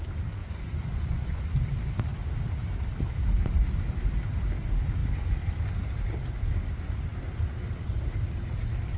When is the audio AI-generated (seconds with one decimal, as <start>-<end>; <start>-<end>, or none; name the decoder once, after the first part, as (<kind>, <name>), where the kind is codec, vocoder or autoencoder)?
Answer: 0.4-1.4 (vocoder, Vocos)